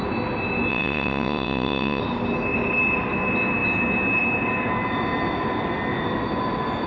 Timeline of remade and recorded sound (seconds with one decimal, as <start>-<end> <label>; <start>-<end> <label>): 0.0-0.7 recorded; 0.7-2.0 remade; 2.0-6.9 recorded

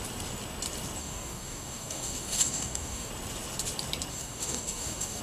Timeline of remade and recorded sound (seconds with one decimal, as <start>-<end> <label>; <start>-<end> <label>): 0.0-1.0 recorded; 1.0-3.1 remade; 3.1-4.1 recorded; 4.1-5.2 remade

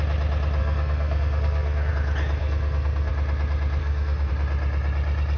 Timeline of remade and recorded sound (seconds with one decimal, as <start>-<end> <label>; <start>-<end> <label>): 0.0-0.6 recorded; 0.6-1.9 remade; 1.9-2.4 recorded; 2.4-3.1 remade; 3.1-3.8 recorded; 3.8-4.3 remade; 4.3-5.4 recorded

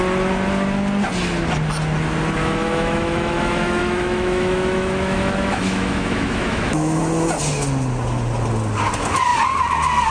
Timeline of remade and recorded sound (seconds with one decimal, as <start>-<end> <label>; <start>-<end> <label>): 0.0-2.4 recorded; 2.4-7.0 remade; 7.0-10.1 recorded